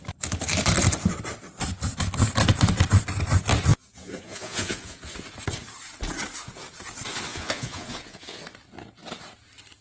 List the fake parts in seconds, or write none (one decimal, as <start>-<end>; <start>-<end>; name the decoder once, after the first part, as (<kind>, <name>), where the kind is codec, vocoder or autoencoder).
3.7-5.1 (vocoder, Vocos); 7.3-8.4